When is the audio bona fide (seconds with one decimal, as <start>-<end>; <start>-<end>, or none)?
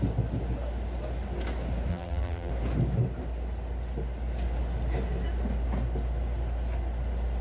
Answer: 0.0-1.9; 2.5-7.4